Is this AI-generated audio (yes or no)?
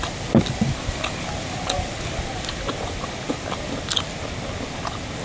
no